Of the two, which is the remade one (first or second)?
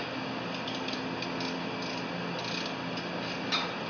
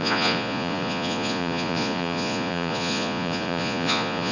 second